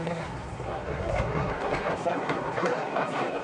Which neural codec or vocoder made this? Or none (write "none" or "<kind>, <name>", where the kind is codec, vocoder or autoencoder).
codec, SNAC